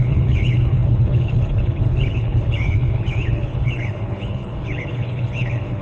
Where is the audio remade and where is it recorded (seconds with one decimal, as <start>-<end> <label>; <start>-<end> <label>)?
0.0-5.8 remade